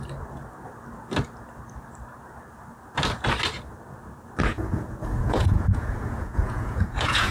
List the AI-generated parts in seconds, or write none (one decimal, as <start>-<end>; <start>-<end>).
4.5-7.3